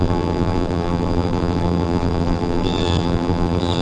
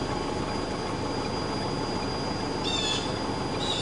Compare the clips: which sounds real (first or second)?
second